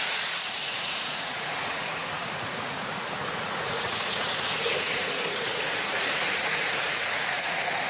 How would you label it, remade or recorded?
remade